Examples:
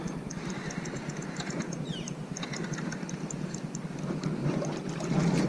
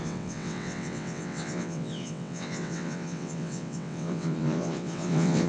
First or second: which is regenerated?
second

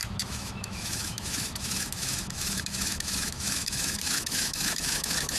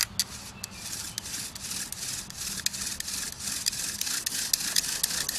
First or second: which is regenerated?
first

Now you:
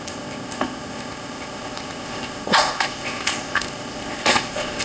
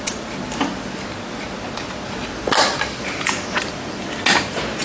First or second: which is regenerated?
first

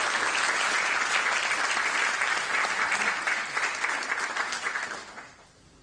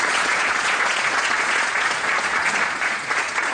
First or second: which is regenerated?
second